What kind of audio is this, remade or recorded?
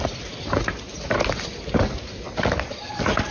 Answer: recorded